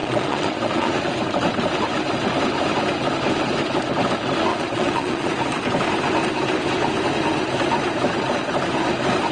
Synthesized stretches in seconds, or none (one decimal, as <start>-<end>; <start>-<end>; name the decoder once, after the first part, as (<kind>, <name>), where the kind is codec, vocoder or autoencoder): 0.0-1.0 (vocoder, Vocos); 4.5-5.3